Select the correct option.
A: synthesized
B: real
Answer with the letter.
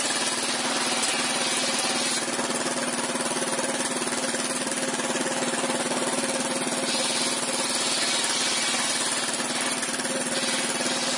B